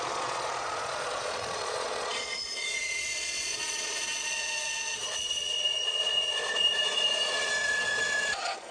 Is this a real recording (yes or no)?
no